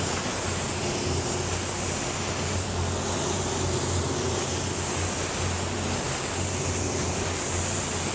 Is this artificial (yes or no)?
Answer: no